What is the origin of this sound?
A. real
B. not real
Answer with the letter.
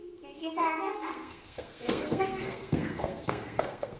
B